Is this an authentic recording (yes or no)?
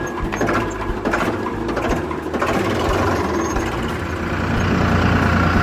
yes